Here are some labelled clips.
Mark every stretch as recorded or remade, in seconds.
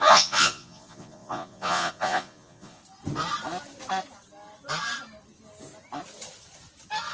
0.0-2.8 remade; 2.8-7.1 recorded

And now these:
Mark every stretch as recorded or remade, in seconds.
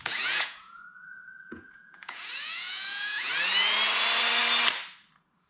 0.0-3.3 remade; 3.3-5.5 recorded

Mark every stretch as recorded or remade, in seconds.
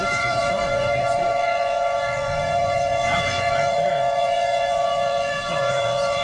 0.0-6.2 remade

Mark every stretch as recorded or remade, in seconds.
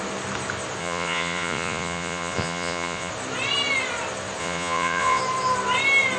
0.0-0.8 recorded; 0.8-3.1 remade; 3.1-4.4 recorded; 4.4-5.2 remade; 5.2-6.2 recorded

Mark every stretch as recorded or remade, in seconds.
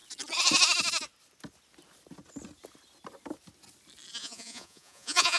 0.0-4.2 recorded; 4.2-5.4 remade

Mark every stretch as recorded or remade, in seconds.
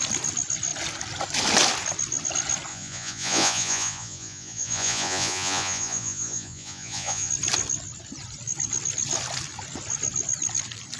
0.0-2.7 recorded; 2.7-7.3 remade; 7.3-11.0 recorded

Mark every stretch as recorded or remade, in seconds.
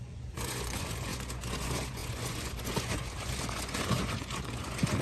0.0-5.0 remade